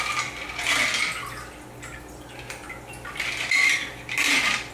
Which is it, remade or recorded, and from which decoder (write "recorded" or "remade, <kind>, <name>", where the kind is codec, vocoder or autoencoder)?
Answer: recorded